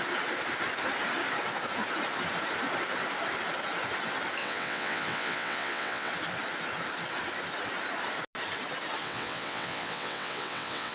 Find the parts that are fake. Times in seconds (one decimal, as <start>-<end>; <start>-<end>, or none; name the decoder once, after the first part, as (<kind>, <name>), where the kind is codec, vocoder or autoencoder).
4.4-6.1 (vocoder, WaveNeXt); 9.0-10.9